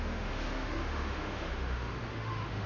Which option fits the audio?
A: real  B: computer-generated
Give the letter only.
B